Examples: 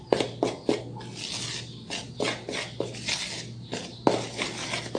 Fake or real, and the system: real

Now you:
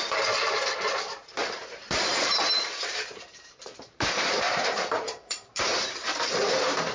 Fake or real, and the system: fake, vocoder, BigVGAN v2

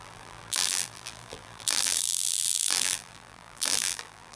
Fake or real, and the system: fake, vocoder, BigVGAN v2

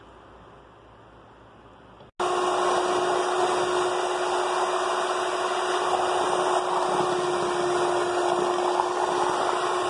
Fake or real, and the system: real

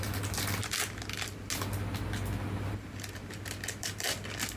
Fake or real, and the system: real